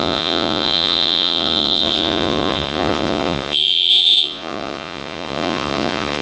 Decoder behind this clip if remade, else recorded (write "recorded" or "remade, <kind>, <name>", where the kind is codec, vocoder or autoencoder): remade, vocoder, Vocos